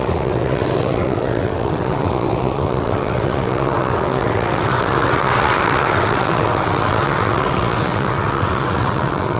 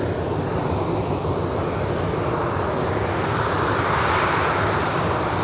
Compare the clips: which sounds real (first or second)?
second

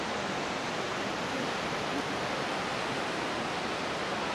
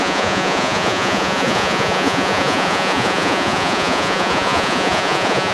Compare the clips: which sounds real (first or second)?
first